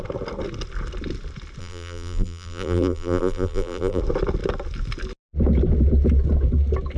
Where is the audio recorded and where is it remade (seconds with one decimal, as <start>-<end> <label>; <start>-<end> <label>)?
0.0-1.6 recorded; 1.6-4.0 remade; 4.0-7.0 recorded